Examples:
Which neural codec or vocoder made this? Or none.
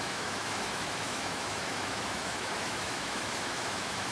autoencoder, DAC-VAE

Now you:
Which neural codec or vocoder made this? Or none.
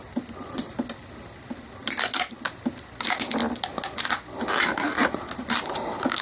none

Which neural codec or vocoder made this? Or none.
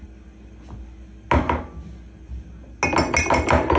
none